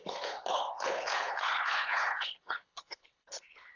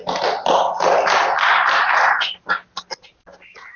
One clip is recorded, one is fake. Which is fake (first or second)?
first